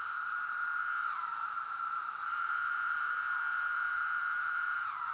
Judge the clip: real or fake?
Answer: real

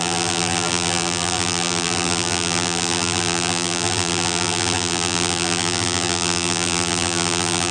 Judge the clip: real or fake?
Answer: fake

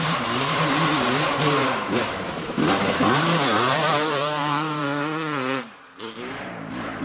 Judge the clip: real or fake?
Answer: fake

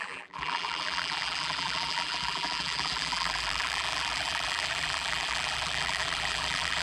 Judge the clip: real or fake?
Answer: fake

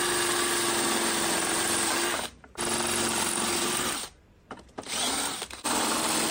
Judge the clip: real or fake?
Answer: real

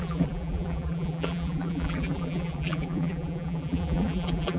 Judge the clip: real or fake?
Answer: fake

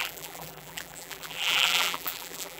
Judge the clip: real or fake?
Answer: fake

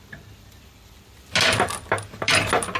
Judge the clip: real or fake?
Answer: real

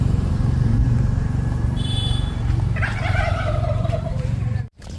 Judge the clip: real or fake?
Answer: fake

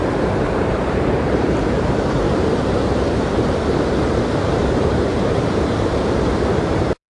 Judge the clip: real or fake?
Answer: fake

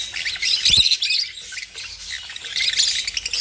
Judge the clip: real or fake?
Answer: real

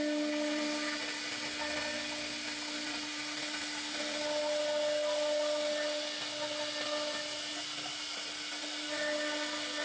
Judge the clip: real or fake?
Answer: real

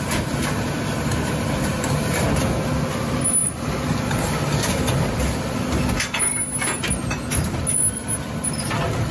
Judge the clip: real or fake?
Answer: real